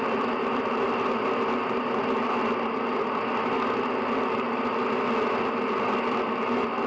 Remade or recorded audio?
recorded